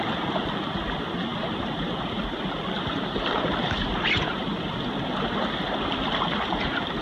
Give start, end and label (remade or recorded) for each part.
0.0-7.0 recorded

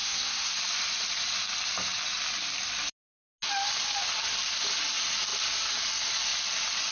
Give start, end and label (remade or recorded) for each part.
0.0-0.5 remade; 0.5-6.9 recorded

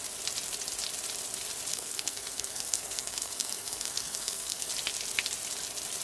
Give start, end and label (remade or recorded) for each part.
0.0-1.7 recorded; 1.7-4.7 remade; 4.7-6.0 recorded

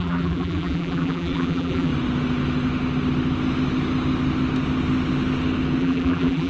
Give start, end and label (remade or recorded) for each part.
0.0-1.9 remade; 1.9-5.8 recorded; 5.8-6.5 remade

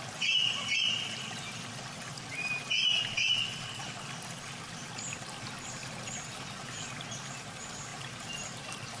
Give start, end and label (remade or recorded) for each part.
0.0-7.9 recorded; 7.9-9.0 remade